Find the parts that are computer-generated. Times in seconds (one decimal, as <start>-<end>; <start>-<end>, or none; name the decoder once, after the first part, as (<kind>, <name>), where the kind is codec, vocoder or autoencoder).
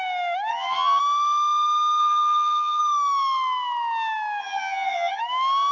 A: 0.5-1.0 (vocoder, HiFi-GAN); 2.0-2.8; 4.4-5.2